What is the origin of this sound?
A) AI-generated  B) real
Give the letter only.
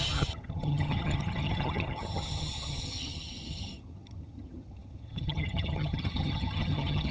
A